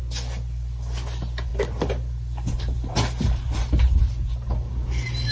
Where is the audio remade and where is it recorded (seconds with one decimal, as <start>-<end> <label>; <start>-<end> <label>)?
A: 0.0-5.3 recorded

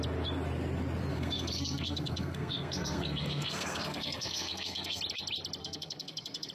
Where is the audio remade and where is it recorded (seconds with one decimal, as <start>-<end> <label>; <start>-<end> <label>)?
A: 0.0-1.1 recorded; 1.1-5.0 remade; 5.0-5.6 recorded; 5.6-6.5 remade

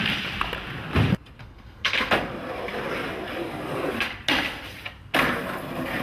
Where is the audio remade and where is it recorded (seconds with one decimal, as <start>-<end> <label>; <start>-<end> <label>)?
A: 0.0-1.4 recorded; 1.4-2.1 remade; 2.1-6.0 recorded

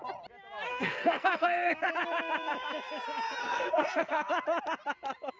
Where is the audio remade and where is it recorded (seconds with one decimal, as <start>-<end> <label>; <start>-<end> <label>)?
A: 0.0-0.7 recorded; 0.7-1.9 remade; 1.9-3.4 recorded; 3.4-4.3 remade; 4.3-5.4 recorded

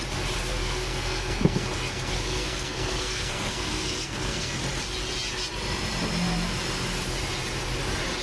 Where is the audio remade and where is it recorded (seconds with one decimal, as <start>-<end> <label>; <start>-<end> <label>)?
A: 0.0-0.6 recorded; 0.6-4.6 remade; 4.6-8.2 recorded

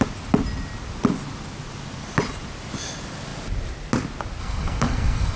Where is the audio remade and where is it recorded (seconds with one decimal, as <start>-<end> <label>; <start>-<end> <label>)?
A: 0.0-4.4 recorded; 4.4-5.4 remade

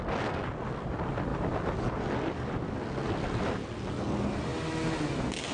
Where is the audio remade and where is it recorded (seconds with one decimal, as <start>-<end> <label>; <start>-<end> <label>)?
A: 0.0-5.5 recorded